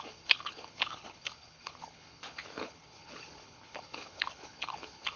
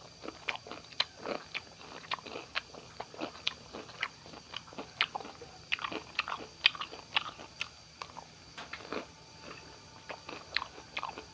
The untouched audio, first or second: second